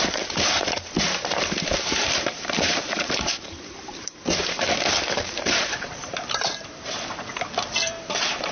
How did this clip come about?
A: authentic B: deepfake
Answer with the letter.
B